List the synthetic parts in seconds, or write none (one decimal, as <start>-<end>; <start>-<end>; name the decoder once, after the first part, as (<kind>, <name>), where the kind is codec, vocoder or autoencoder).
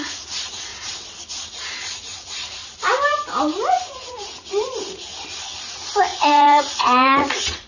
0.0-0.7 (vocoder, Vocos); 1.4-2.6; 3.8-5.1; 5.6-7.7